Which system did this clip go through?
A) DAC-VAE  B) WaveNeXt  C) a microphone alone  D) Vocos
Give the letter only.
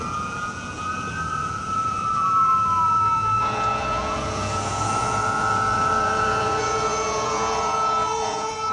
D